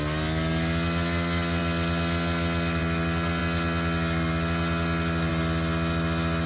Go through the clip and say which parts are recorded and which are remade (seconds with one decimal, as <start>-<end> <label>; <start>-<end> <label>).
0.0-6.5 recorded